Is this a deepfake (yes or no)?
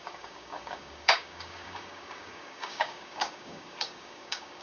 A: yes